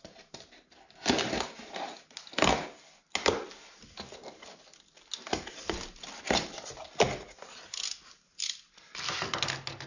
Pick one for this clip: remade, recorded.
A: recorded